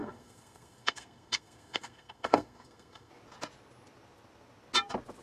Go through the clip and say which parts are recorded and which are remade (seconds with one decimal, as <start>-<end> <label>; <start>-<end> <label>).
0.0-3.1 remade; 3.1-5.2 recorded